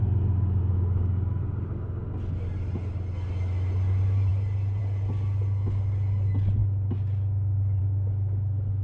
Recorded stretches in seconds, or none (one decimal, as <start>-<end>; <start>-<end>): 0.0-8.8

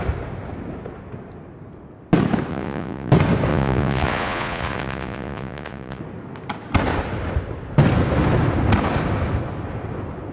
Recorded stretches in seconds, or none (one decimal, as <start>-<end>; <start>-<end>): 0.0-2.5; 3.1-3.5; 6.0-10.3

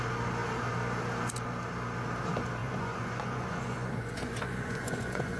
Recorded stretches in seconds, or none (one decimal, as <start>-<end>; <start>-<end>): 0.0-2.6

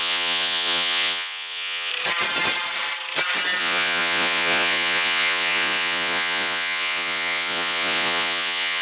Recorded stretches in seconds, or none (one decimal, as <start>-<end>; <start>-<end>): 1.9-3.6

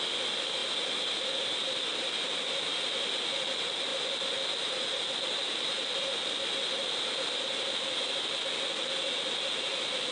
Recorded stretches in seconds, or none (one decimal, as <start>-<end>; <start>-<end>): 0.0-10.1

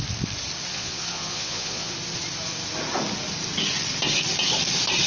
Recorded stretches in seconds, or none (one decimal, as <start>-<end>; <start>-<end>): 0.0-0.7; 1.9-5.1

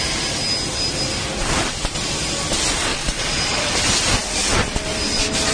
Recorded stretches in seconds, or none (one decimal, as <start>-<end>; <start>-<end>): 0.0-2.9; 3.7-5.5

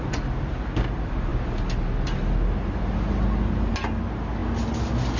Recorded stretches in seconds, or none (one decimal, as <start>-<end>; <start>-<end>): 0.0-5.2